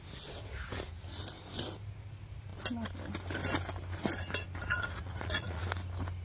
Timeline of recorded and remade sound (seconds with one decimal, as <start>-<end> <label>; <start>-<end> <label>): 0.0-4.7 recorded; 4.7-5.6 remade; 5.6-6.2 recorded